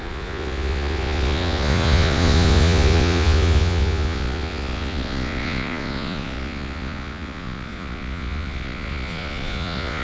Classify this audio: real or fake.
fake